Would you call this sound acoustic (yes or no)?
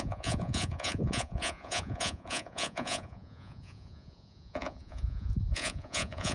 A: no